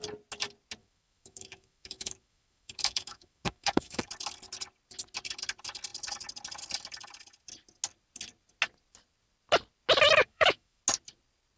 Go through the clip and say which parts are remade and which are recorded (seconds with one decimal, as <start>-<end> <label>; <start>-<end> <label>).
0.0-0.8 recorded; 0.8-4.1 remade; 4.1-10.2 recorded; 10.2-10.8 remade; 10.8-11.6 recorded